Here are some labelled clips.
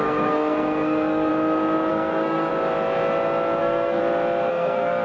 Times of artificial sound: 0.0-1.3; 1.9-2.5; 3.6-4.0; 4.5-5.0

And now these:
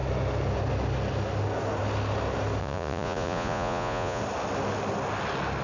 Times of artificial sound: 2.6-4.2